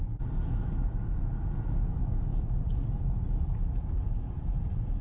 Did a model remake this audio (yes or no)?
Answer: no